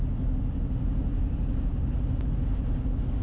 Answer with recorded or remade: recorded